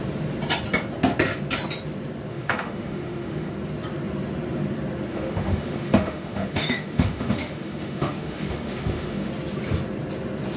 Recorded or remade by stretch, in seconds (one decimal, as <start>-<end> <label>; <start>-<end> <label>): 0.0-2.3 recorded; 2.3-3.5 remade; 3.5-5.1 recorded; 5.1-9.3 remade; 9.3-10.6 recorded

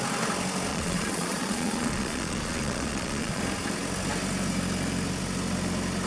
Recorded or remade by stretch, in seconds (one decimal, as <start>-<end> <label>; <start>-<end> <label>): 0.0-0.7 recorded; 0.7-3.4 remade; 3.4-6.1 recorded

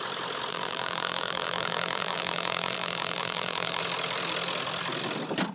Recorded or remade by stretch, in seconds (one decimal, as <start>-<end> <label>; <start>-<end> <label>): 0.0-0.5 recorded; 0.5-3.8 remade; 3.8-5.5 recorded

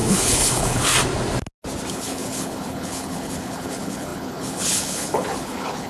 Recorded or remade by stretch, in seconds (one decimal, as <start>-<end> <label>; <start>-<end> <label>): 0.0-0.9 remade; 0.9-1.9 recorded; 1.9-5.9 remade

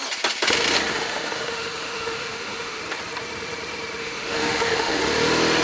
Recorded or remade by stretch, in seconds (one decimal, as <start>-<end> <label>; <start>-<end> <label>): 0.0-0.9 recorded; 0.9-2.8 remade; 2.8-4.0 recorded; 4.0-5.0 remade; 5.0-5.6 recorded

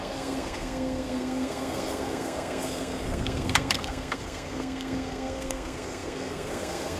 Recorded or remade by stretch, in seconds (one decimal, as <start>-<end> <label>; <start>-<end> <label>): 0.0-7.0 remade

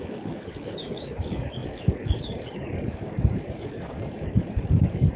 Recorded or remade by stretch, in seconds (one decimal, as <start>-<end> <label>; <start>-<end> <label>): 0.0-5.2 remade

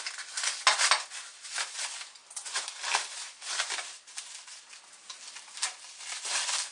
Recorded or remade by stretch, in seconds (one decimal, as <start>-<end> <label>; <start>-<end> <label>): 0.0-6.7 recorded